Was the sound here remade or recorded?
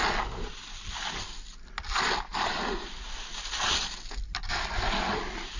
recorded